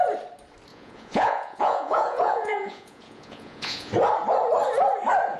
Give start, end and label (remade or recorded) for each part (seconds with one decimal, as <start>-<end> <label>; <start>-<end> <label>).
0.0-0.7 recorded; 0.7-3.9 remade; 3.9-5.4 recorded